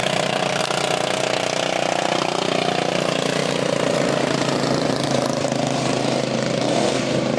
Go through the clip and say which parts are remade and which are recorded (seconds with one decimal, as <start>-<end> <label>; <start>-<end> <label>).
0.0-0.6 remade; 0.6-3.4 recorded; 3.4-7.4 remade